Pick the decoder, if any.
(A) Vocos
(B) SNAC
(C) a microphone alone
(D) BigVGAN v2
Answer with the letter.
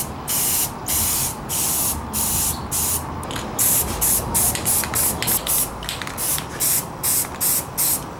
C